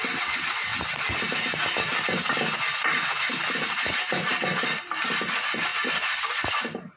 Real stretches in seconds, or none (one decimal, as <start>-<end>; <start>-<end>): 0.0-7.0